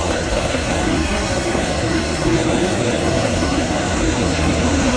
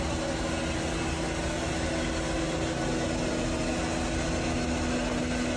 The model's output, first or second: first